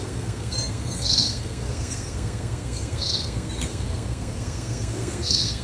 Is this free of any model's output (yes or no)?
no